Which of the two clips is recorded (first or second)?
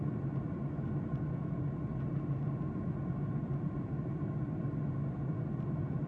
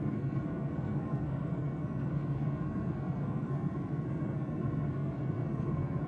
first